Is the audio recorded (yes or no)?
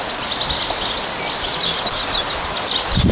yes